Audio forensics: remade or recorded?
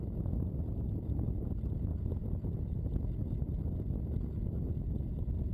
remade